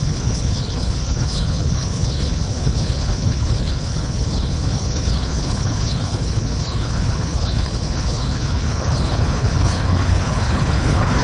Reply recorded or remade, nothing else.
remade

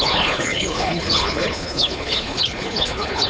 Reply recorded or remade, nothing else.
remade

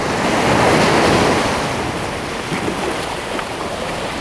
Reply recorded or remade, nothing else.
recorded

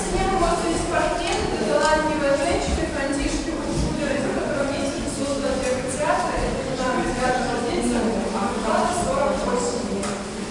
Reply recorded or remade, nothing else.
recorded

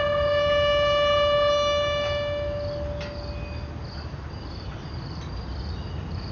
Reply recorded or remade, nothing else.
recorded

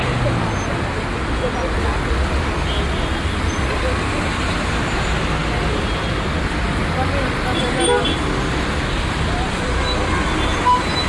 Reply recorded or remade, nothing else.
recorded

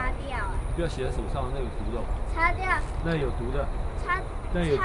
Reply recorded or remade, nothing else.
recorded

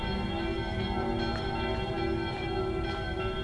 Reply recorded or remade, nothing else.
recorded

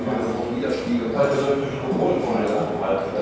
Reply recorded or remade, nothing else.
recorded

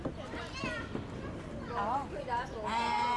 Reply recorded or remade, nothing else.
recorded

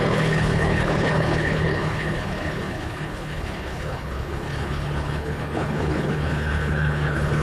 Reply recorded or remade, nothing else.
remade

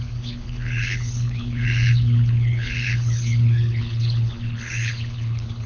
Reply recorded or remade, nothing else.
remade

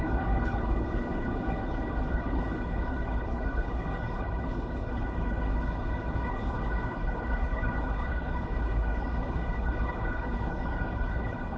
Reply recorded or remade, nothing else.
remade